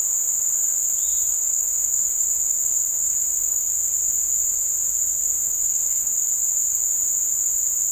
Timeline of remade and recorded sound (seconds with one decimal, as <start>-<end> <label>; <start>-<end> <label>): 0.0-1.1 recorded; 1.1-3.7 remade; 3.7-5.4 recorded; 5.4-6.1 remade; 6.1-7.9 recorded